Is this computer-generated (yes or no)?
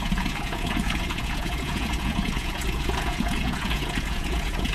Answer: yes